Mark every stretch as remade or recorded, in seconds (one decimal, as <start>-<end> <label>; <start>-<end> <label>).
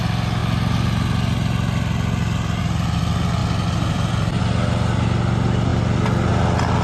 0.0-3.4 recorded; 3.4-4.4 remade; 4.4-6.8 recorded